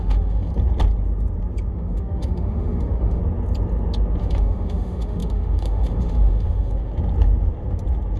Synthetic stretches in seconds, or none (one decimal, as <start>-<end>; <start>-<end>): 0.0-0.5; 1.7-3.2; 4.2-6.9